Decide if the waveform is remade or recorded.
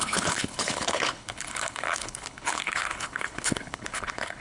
remade